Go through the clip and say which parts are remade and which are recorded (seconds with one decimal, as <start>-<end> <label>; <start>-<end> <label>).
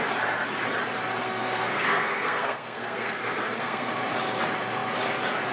0.0-1.2 recorded; 1.2-3.9 remade; 3.9-5.5 recorded